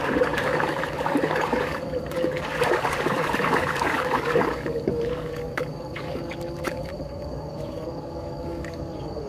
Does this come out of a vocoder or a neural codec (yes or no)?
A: yes